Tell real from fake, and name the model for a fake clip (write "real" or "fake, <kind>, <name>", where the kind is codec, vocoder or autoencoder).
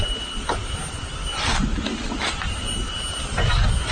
real